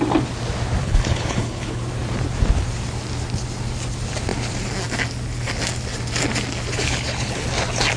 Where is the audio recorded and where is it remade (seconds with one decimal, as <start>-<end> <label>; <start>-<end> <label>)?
0.0-0.8 recorded; 0.8-1.8 remade; 1.8-6.8 recorded; 6.8-7.4 remade; 7.4-8.0 recorded